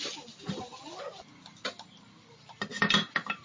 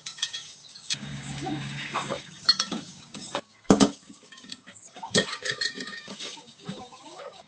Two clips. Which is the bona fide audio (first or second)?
first